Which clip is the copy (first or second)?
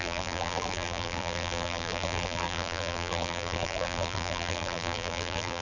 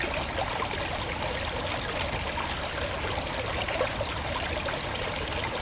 first